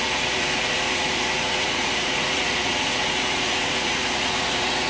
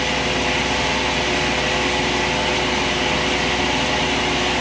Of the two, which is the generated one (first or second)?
first